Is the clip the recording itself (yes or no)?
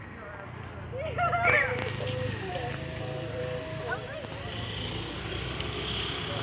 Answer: yes